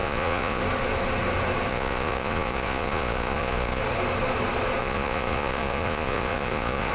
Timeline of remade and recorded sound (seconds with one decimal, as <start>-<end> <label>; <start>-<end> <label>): 0.0-0.6 remade; 0.6-1.7 recorded; 1.7-3.8 remade; 3.8-4.8 recorded; 4.8-6.9 remade